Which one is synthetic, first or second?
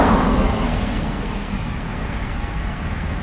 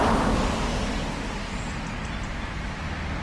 first